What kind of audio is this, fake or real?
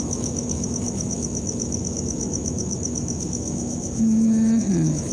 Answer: fake